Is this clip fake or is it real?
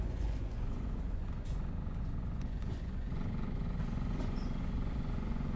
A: fake